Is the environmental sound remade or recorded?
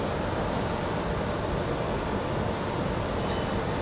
recorded